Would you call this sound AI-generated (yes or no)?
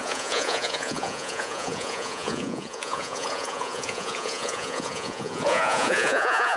yes